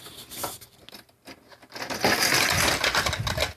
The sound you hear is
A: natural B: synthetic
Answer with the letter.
A